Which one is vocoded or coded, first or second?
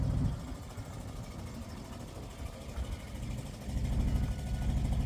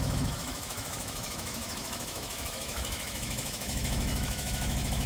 second